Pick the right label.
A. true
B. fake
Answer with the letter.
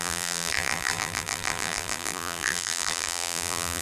B